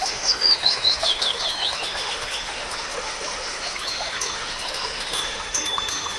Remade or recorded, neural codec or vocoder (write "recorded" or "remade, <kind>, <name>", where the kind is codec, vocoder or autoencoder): remade, autoencoder, DAC-VAE